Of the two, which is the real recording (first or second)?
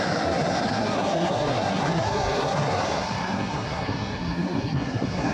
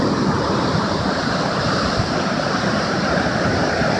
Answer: second